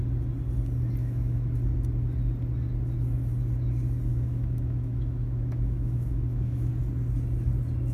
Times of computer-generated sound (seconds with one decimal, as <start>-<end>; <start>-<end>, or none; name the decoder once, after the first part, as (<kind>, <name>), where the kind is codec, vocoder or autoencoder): 1.0-1.5 (autoencoder, DAC-VAE); 4.1-6.7